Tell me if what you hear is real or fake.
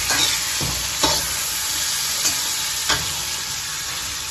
fake